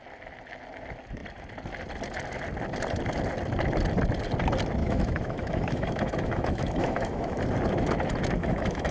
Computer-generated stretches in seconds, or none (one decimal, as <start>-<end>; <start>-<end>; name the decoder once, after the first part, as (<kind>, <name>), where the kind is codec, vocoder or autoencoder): 4.8-7.4 (autoencoder, DAC-VAE); 8.4-8.9